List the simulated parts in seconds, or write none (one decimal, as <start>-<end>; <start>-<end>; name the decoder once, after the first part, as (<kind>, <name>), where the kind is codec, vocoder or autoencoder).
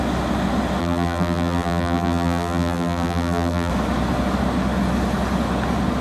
0.8-3.7 (vocoder, BigVGAN v2)